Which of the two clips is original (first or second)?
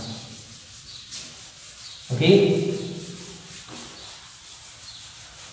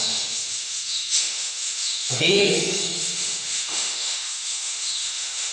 first